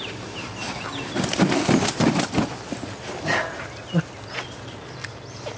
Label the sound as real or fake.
real